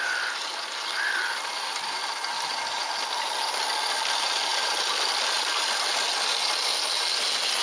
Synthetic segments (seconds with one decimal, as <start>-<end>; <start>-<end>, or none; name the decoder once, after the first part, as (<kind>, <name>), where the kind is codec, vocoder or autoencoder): none